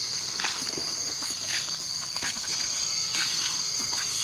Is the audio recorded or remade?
remade